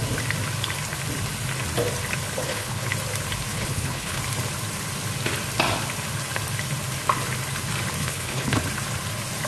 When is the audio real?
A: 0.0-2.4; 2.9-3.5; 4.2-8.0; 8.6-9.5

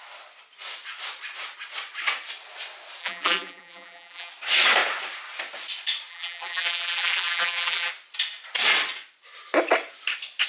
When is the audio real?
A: 0.0-3.0; 4.3-6.1; 7.9-10.5

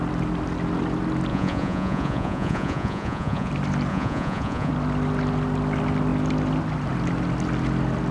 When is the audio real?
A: 0.0-1.3; 3.5-3.9; 4.7-8.1

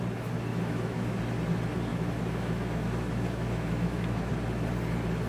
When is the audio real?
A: 0.0-0.5; 1.2-1.9; 4.3-5.3

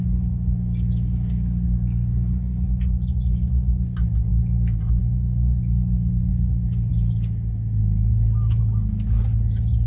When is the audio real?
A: 0.0-7.8; 8.6-9.9

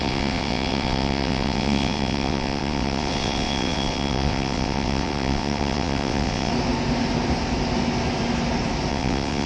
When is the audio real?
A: 6.5-8.9